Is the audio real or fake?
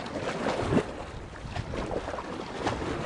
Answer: fake